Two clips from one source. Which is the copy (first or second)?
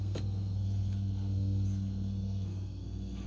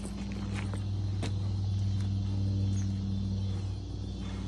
first